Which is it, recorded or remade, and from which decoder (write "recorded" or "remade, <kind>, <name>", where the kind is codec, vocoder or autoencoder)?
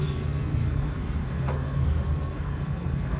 remade, codec, SNAC